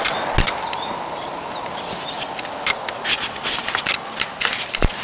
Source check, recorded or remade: recorded